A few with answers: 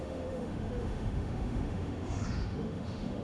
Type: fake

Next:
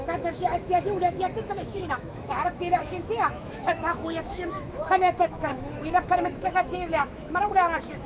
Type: fake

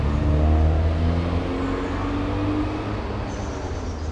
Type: real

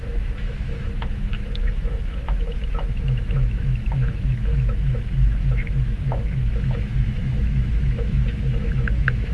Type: fake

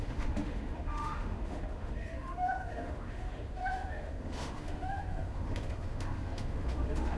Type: fake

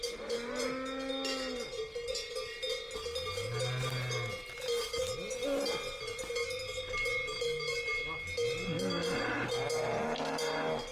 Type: real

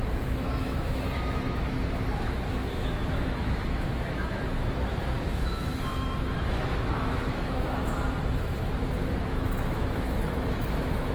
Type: fake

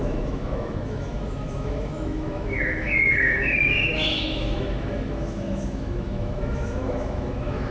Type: fake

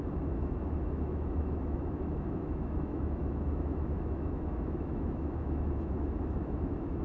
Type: fake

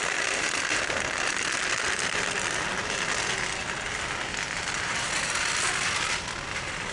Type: real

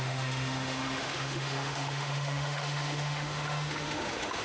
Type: fake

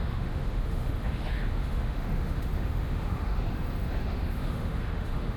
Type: fake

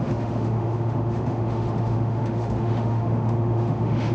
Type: fake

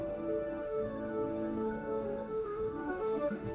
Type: fake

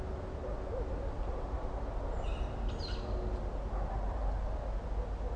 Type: real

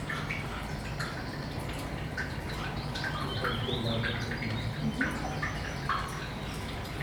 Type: real